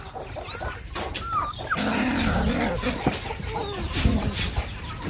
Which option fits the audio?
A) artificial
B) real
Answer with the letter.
B